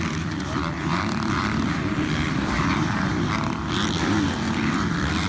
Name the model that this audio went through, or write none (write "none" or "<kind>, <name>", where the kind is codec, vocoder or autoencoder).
vocoder, BigVGAN v2